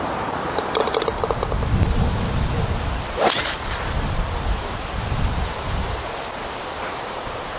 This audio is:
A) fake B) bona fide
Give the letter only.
B